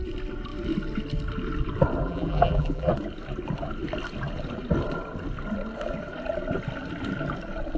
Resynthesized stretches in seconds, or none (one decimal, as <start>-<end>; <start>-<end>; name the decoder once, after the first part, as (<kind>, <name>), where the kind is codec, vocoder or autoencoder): 2.0-2.9 (vocoder, BigVGAN v2)